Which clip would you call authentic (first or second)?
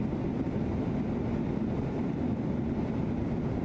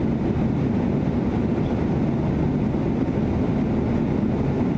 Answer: second